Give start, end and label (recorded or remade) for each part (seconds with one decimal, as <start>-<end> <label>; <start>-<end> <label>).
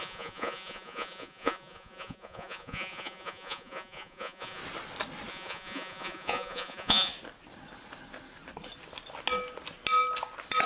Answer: 0.0-4.6 remade; 4.6-5.3 recorded; 5.3-7.1 remade; 7.1-10.7 recorded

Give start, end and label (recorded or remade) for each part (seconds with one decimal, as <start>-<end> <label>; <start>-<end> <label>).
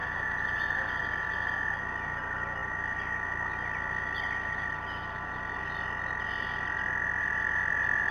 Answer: 0.0-0.6 remade; 0.6-8.1 recorded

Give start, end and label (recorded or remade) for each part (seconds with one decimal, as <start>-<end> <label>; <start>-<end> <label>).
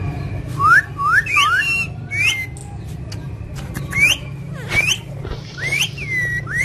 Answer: 0.0-6.6 recorded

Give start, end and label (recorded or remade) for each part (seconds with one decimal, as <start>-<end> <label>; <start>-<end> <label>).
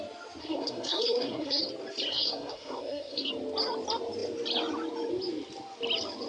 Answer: 0.0-0.4 recorded; 0.4-1.6 remade; 1.6-2.1 recorded; 2.1-3.3 remade; 3.3-6.3 recorded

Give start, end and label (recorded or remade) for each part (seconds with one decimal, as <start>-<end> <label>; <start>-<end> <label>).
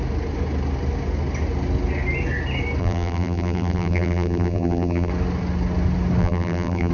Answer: 0.0-2.8 recorded; 2.8-5.1 remade; 5.1-6.2 recorded; 6.2-6.9 remade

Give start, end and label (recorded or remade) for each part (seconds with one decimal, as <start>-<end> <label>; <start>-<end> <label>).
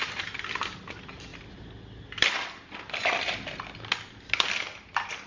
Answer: 0.0-5.3 recorded